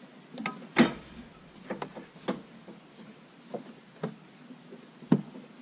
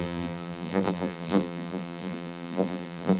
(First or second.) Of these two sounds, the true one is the first